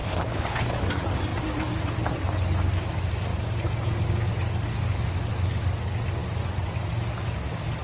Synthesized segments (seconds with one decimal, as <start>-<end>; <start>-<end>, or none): 0.0-0.8